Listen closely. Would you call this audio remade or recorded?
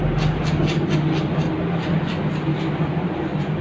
recorded